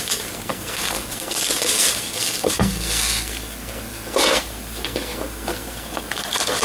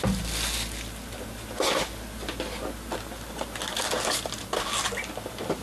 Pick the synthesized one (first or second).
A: first